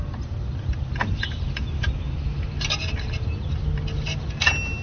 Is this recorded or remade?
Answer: recorded